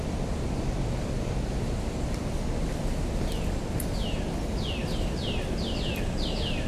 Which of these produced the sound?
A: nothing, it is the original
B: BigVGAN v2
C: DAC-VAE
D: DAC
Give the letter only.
A